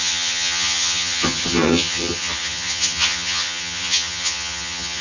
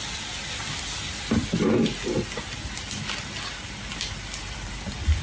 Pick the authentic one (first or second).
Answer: second